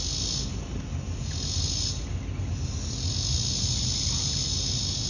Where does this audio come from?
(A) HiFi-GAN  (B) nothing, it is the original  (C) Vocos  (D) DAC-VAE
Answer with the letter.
B